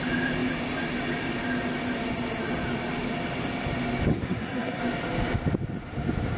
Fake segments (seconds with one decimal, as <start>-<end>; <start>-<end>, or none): 4.1-4.8